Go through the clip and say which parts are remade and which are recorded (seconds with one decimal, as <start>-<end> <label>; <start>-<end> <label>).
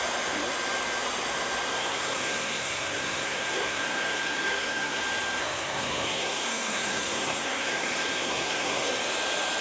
0.0-1.7 recorded; 1.7-5.0 remade; 5.0-5.4 recorded; 5.4-8.9 remade; 8.9-9.6 recorded